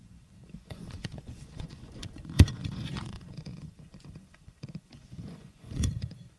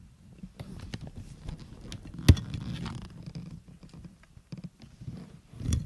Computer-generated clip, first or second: first